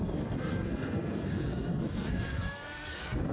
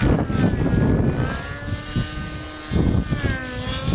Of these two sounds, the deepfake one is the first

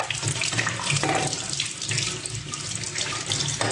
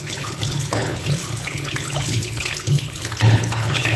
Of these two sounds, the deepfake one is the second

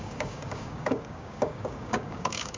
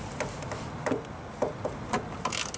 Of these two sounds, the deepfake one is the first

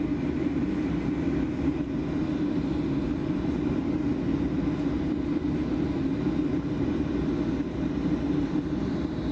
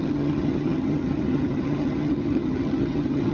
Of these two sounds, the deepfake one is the second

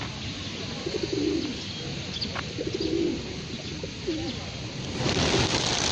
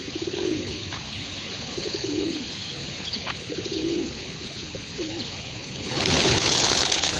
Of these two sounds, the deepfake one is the second